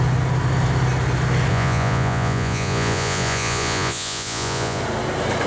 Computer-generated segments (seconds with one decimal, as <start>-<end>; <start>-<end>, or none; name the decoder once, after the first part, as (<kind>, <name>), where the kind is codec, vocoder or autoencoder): 1.5-4.8 (vocoder, Vocos)